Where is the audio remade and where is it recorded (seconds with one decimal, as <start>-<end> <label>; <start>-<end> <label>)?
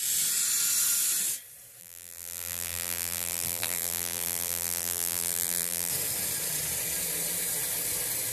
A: 0.0-1.8 recorded; 1.8-5.9 remade; 5.9-8.3 recorded